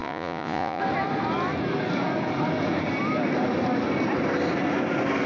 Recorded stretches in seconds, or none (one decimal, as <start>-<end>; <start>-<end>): 0.8-5.3